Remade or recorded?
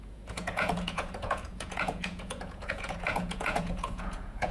remade